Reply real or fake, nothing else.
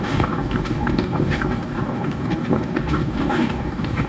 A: fake